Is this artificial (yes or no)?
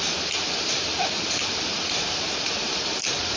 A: no